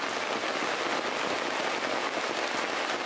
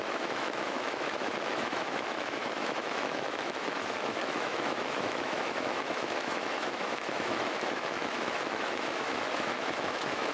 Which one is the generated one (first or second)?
second